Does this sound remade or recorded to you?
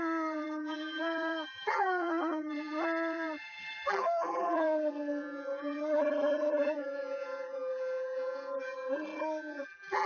remade